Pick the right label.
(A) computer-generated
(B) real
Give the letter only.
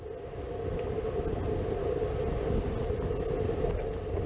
B